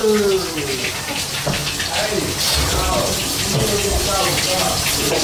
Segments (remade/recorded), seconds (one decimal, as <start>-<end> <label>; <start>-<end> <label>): 0.0-5.2 recorded